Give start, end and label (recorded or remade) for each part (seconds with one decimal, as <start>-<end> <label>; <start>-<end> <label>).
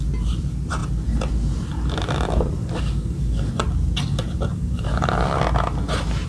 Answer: 0.0-2.6 recorded; 2.6-3.5 remade; 3.5-4.5 recorded; 4.5-5.4 remade; 5.4-6.3 recorded